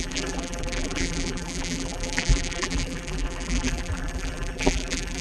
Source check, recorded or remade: remade